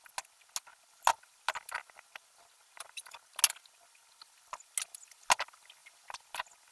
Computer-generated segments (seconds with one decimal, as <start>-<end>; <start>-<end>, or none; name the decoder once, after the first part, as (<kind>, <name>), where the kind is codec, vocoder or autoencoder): none